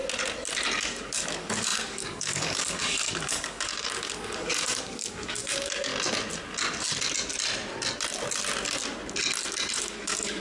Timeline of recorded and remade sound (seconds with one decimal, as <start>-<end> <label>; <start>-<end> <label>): 0.0-0.8 recorded; 0.8-5.9 remade; 5.9-9.8 recorded; 9.8-10.4 remade